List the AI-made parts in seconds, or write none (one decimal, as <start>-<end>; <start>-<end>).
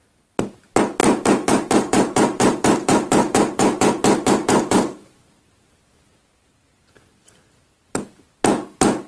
1.0-5.4